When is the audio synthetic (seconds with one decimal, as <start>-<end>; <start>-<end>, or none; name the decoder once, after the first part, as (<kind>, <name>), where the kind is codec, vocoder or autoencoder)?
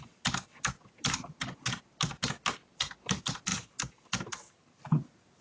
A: none